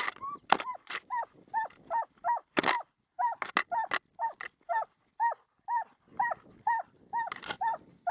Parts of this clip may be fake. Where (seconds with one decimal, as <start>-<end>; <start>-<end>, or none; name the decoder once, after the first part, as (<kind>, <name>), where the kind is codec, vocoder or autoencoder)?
none